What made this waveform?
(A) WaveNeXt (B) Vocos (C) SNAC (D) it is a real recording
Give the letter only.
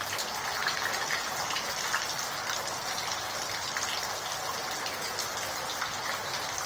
D